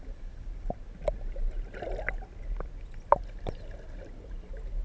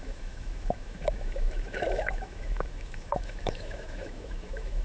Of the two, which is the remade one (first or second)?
second